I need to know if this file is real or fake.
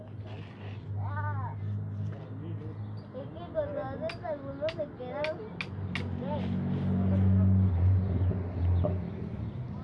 real